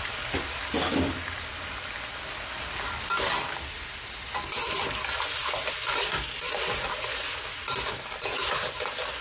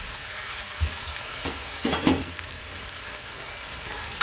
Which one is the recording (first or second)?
first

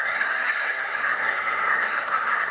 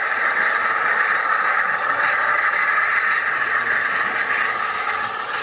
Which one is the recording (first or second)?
second